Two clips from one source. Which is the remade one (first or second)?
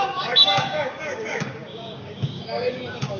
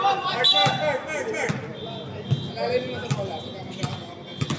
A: first